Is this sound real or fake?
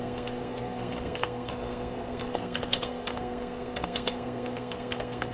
fake